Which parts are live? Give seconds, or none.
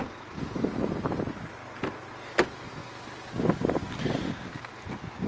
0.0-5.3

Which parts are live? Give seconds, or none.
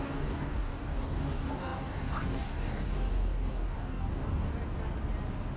4.5-5.6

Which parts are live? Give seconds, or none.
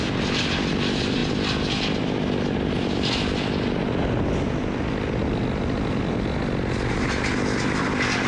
0.0-8.3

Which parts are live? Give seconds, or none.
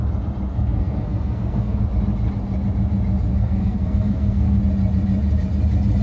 0.0-0.5; 1.8-3.3; 4.6-6.0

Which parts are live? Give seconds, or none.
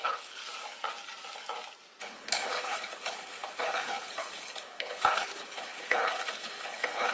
0.4-2.0